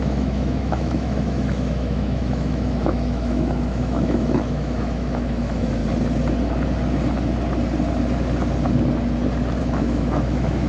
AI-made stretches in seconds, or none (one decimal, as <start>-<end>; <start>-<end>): 0.0-5.8; 9.6-10.7